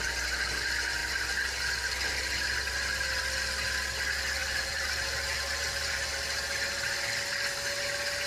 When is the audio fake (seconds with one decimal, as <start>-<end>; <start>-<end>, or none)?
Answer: 4.4-6.1